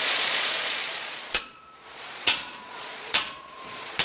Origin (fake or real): fake